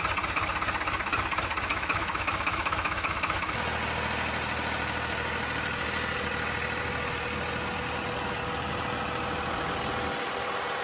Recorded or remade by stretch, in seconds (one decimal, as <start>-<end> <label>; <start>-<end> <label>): 0.0-1.7 recorded; 1.7-3.6 remade; 3.6-10.8 recorded